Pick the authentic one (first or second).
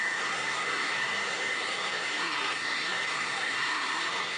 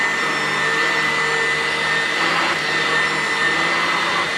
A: second